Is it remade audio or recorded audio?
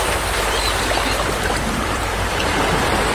remade